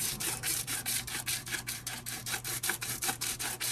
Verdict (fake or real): fake